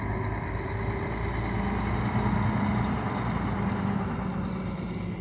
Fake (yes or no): no